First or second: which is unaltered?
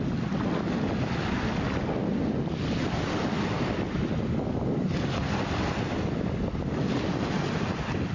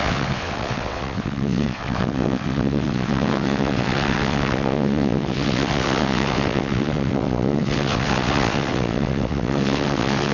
first